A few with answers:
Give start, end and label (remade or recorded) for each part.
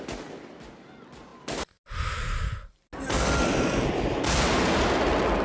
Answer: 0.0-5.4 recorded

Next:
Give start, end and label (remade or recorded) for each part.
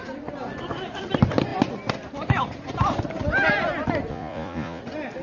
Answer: 0.0-4.1 recorded; 4.1-4.8 remade; 4.8-5.2 recorded